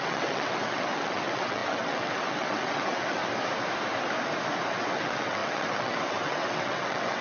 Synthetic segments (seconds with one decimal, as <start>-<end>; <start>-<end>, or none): 0.0-3.2; 4.7-7.2